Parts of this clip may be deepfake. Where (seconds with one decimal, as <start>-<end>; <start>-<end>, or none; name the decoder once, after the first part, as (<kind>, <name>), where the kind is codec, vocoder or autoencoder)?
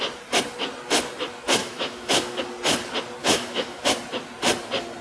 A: 1.6-2.4 (autoencoder, DAC-VAE); 3.2-3.9